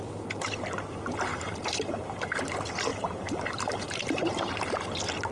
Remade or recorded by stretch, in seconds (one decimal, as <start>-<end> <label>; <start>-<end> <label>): 0.0-1.3 recorded; 1.3-2.5 remade; 2.5-2.9 recorded; 2.9-4.5 remade; 4.5-5.3 recorded